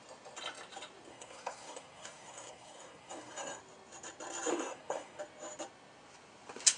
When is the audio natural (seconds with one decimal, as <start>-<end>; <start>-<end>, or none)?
0.0-1.1; 3.6-4.5; 5.2-6.8